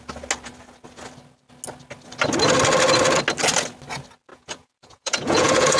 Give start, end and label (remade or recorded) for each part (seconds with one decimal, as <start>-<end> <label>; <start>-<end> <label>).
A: 0.0-4.3 recorded; 4.3-5.8 remade